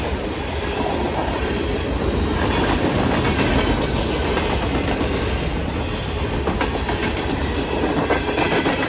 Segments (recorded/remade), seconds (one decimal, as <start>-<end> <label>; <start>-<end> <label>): 0.0-2.3 remade; 2.3-7.2 recorded; 7.2-8.9 remade